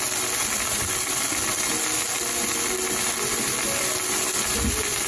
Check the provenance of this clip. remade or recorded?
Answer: recorded